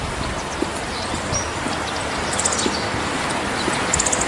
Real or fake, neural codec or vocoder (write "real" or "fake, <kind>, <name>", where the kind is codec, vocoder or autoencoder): real